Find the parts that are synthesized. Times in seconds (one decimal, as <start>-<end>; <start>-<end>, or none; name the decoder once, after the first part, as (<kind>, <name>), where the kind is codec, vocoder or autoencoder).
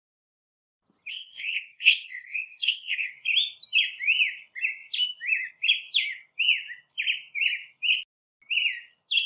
1.1-3.1 (codec, ZipCodec)